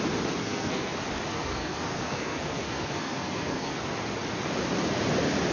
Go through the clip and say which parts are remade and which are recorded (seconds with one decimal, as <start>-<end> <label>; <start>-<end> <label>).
0.0-0.4 recorded; 0.4-0.9 remade; 0.9-1.3 recorded; 1.3-3.8 remade; 3.8-5.5 recorded